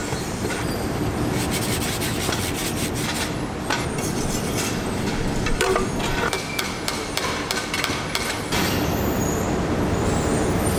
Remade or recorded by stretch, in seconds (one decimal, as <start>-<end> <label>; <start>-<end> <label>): 0.0-1.1 remade; 1.1-10.8 recorded